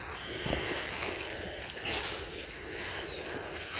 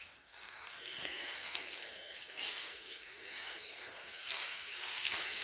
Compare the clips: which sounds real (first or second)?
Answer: first